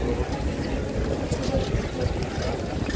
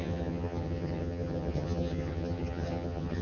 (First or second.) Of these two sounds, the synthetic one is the second